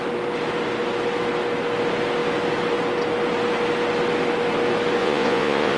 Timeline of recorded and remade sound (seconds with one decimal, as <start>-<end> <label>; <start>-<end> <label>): 0.0-5.0 recorded; 5.0-5.8 remade